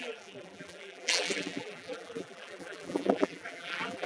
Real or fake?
fake